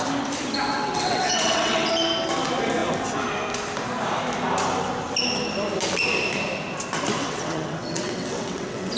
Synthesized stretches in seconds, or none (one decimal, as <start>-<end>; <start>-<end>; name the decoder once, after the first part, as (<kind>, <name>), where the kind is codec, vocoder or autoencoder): 0.7-1.9 (vocoder, WaveNeXt); 7.2-9.0